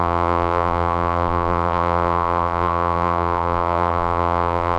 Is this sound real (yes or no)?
no